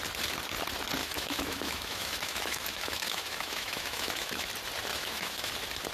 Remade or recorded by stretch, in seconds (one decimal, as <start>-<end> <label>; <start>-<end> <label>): 0.0-1.0 recorded; 1.0-4.5 remade; 4.5-4.9 recorded; 4.9-5.5 remade; 5.5-5.9 recorded